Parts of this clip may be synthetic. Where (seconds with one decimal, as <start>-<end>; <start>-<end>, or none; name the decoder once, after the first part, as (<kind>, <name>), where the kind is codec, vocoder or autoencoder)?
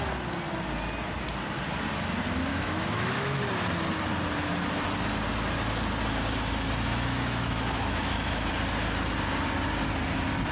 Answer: 2.5-3.4 (autoencoder, DAC-VAE); 6.9-8.5